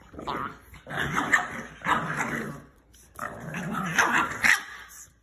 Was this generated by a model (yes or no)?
no